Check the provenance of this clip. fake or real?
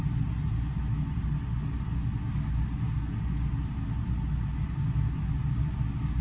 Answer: real